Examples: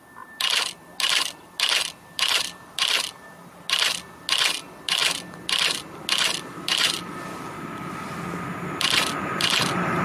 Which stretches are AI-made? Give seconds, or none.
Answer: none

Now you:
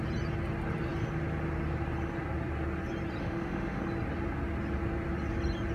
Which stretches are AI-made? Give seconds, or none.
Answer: 3.2-3.8